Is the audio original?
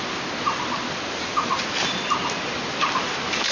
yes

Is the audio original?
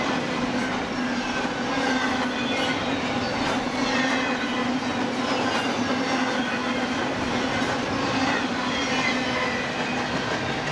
yes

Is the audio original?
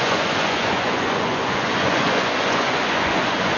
no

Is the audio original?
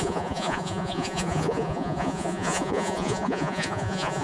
no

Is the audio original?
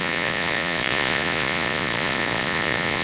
no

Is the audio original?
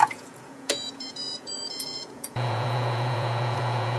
no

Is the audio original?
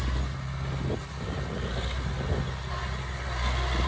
yes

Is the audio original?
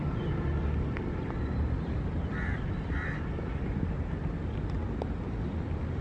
yes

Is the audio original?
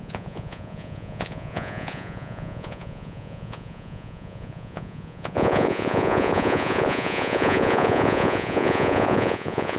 no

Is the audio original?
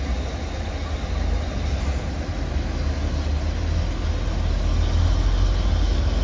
yes